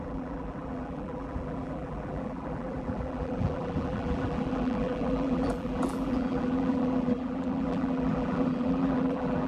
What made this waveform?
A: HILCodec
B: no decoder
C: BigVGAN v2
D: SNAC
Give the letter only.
C